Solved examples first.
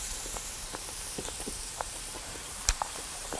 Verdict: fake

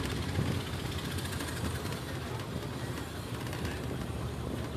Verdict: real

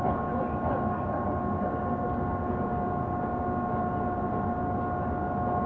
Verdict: real